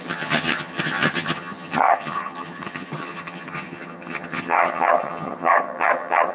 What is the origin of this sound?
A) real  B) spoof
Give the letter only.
B